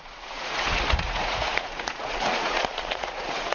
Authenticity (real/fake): fake